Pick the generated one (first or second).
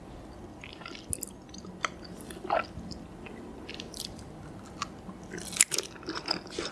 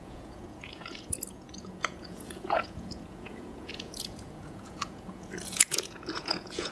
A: second